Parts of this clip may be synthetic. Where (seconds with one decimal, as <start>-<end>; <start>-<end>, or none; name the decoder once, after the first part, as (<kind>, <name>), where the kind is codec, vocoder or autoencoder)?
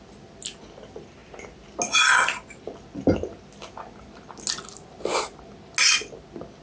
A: none